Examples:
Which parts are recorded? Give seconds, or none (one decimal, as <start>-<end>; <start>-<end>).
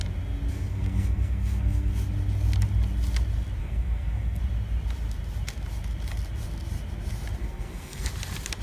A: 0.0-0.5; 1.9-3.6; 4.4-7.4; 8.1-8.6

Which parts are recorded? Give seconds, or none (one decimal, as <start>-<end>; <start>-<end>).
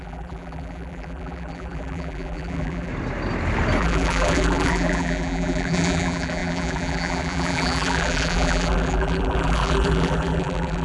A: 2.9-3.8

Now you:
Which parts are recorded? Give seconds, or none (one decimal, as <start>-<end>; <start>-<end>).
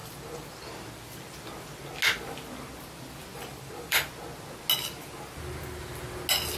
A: 0.6-3.3; 4.1-6.6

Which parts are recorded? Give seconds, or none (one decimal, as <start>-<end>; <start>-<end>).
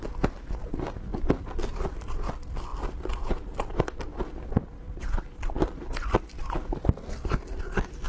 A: 0.0-8.1